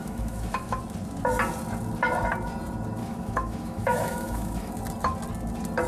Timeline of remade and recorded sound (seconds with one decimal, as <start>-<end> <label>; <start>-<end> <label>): 0.0-0.8 remade; 0.8-3.0 recorded; 3.0-4.7 remade; 4.7-5.9 recorded